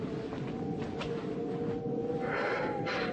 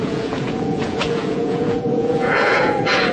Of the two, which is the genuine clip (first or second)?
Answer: first